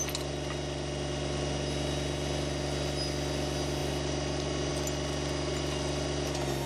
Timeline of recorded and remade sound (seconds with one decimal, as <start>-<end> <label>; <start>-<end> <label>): 0.0-6.7 recorded